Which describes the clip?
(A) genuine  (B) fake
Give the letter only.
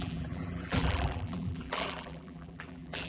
B